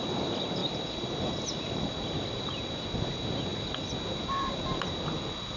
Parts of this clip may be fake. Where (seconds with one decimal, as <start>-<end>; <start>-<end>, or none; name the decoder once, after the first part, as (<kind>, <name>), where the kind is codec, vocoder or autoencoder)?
none